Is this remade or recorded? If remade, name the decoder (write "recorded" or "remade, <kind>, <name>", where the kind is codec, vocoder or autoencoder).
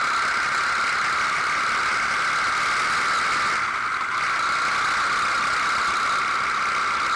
recorded